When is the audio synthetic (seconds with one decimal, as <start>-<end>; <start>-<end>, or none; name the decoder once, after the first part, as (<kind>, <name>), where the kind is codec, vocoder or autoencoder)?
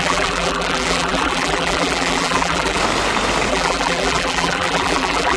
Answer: 0.0-2.8 (vocoder, BigVGAN v2); 3.5-5.4